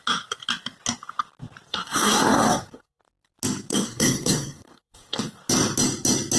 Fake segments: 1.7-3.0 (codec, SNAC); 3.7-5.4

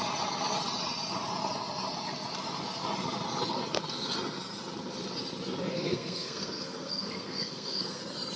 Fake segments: 5.7-8.0 (codec, SNAC)

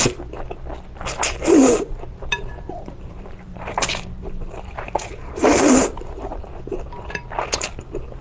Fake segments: 1.6-6.4 (vocoder, BigVGAN v2)

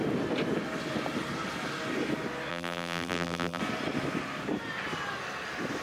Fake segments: 2.5-3.6 (vocoder, BigVGAN v2)

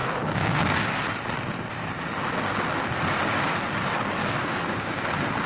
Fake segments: 0.0-1.0 (codec, DAC); 4.2-5.0

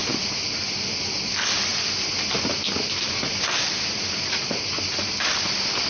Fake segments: none

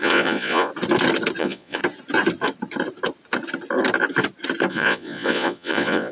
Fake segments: 0.0-0.7 (vocoder, Vocos); 1.4-1.8; 4.7-6.1

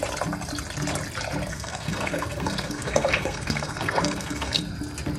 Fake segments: 1.5-4.6 (codec, SNAC)